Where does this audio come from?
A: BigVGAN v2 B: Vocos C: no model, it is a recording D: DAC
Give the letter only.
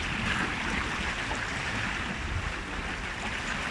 C